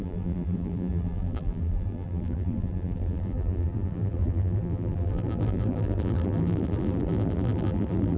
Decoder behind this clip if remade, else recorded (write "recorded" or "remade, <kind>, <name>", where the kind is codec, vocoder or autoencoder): remade, vocoder, BigVGAN v2